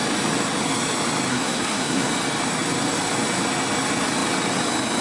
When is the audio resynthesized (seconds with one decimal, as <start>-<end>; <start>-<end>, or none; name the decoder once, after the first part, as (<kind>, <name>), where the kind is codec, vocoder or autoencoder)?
1.3-2.1 (codec, SNAC)